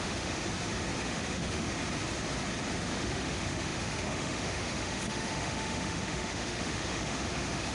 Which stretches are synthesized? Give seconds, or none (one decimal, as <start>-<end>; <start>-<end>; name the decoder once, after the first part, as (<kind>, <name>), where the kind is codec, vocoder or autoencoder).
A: 0.0-0.4 (autoencoder, DAC-VAE); 1.0-1.7; 2.8-7.7